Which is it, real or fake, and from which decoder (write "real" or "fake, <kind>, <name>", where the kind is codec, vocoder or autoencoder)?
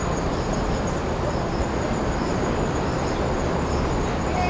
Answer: real